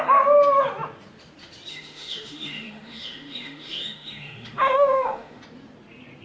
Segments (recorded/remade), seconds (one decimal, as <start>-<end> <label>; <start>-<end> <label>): 0.0-1.7 recorded; 1.7-5.4 remade; 5.4-6.2 recorded